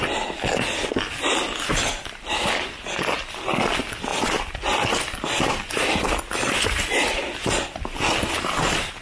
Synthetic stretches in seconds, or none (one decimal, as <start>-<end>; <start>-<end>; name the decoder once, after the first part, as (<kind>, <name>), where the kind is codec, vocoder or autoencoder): none